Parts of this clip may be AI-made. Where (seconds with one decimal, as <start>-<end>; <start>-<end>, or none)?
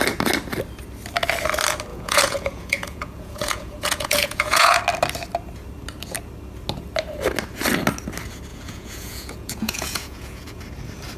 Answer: 1.9-4.8; 8.5-10.6